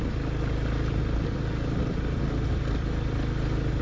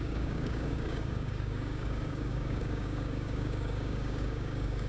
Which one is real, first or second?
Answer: first